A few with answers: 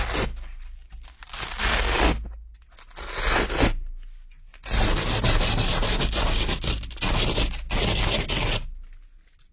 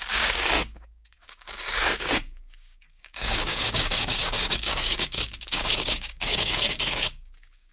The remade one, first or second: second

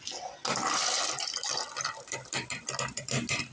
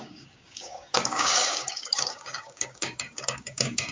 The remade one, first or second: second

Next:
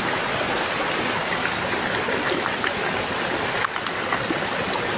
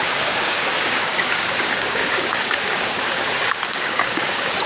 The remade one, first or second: second